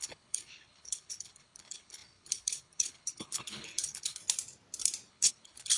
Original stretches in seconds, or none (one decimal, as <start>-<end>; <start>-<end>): 4.2-5.1